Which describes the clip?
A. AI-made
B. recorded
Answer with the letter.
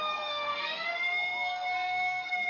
A